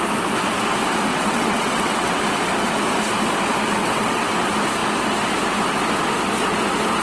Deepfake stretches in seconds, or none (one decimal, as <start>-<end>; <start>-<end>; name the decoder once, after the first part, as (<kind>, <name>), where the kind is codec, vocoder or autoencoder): 1.1-2.2 (vocoder, WaveNeXt); 3.8-4.3